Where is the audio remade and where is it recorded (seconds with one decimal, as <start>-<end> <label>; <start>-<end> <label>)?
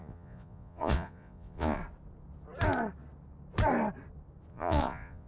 0.0-1.8 remade; 1.8-4.5 recorded; 4.5-5.3 remade